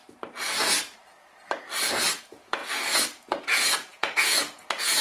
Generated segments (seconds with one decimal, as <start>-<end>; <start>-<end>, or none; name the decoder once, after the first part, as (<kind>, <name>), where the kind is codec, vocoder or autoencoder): 2.2-2.6 (vocoder, Vocos); 3.3-5.0